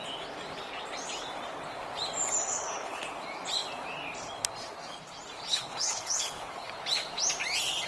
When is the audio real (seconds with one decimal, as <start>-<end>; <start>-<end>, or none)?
0.0-2.5; 3.1-5.5; 6.7-7.9